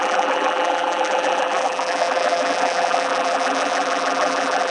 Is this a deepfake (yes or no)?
yes